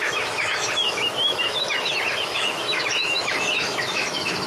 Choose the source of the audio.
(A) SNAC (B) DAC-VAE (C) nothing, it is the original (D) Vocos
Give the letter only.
B